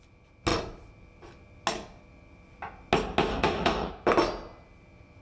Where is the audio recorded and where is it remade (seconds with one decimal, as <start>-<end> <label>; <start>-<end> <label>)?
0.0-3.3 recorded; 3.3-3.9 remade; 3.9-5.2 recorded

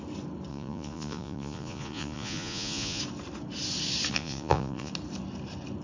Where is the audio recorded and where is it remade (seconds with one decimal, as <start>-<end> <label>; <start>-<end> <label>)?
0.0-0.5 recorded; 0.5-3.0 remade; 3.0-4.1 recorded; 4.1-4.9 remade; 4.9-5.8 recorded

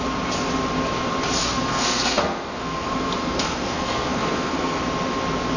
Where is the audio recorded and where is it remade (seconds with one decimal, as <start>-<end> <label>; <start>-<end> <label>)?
0.0-1.4 recorded; 1.4-4.8 remade; 4.8-5.6 recorded